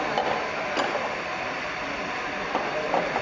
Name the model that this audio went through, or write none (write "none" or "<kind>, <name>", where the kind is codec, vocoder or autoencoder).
none